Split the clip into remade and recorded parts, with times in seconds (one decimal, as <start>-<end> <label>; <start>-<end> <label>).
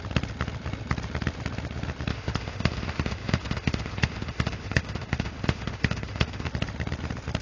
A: 0.0-2.1 recorded; 2.1-6.5 remade; 6.5-7.4 recorded